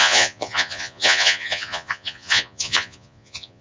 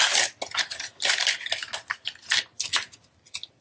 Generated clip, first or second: first